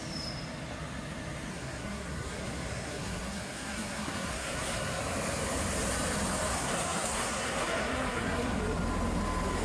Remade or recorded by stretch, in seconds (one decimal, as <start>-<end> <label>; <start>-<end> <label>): 0.0-1.5 recorded; 1.5-5.0 remade; 5.0-6.5 recorded; 6.5-8.6 remade; 8.6-9.6 recorded

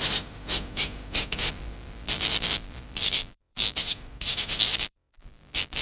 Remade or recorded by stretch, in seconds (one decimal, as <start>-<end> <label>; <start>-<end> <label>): 0.0-1.5 recorded; 1.5-3.8 remade; 3.8-4.6 recorded; 4.6-5.8 remade